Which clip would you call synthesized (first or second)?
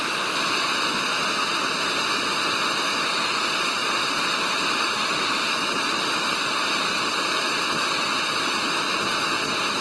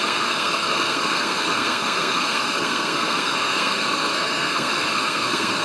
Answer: second